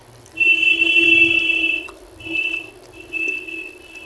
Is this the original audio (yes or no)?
yes